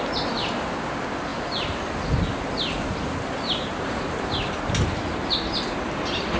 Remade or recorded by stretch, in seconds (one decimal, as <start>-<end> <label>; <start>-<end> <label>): 0.0-6.4 recorded